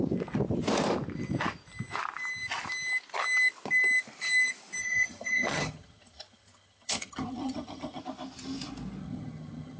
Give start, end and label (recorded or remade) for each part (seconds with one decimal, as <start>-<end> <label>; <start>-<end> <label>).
0.0-4.8 recorded; 4.8-8.0 remade; 8.0-9.0 recorded; 9.0-9.8 remade